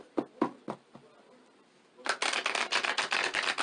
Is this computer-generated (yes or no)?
no